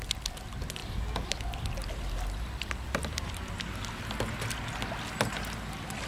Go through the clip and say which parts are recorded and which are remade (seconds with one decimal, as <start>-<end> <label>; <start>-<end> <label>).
0.0-6.1 recorded